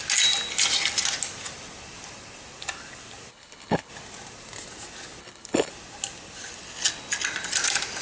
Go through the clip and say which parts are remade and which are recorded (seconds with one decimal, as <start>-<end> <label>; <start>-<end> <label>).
0.0-3.3 recorded; 3.3-3.9 remade; 3.9-5.2 recorded; 5.2-5.7 remade; 5.7-8.0 recorded

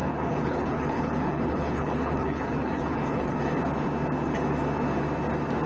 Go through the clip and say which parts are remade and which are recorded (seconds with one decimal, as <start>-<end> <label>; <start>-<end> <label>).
0.0-3.4 remade; 3.4-5.7 recorded

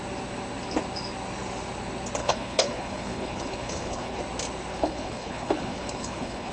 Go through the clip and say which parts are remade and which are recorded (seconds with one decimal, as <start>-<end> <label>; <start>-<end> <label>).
0.0-2.2 recorded; 2.2-4.2 remade; 4.2-4.7 recorded; 4.7-6.5 remade

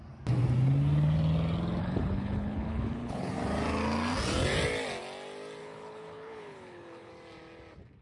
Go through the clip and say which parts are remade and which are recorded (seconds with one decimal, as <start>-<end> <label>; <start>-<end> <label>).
0.0-1.8 recorded; 1.8-3.3 remade; 3.3-5.6 recorded; 5.6-7.1 remade; 7.1-8.0 recorded

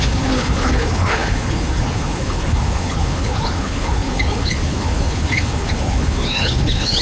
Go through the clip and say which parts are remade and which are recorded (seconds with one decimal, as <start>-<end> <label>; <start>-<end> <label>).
0.0-7.0 remade

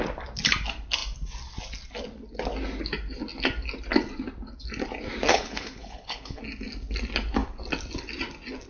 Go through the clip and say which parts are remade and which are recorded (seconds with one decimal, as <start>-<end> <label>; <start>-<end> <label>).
0.0-5.3 recorded; 5.3-6.4 remade; 6.4-8.7 recorded

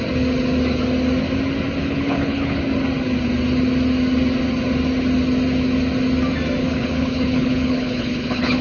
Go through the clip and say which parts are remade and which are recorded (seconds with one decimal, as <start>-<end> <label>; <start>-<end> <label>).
0.0-1.8 recorded; 1.8-2.6 remade; 2.6-6.6 recorded; 6.6-8.6 remade

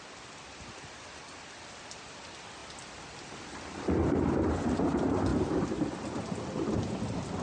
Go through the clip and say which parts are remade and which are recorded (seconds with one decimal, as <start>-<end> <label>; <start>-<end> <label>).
0.0-7.4 recorded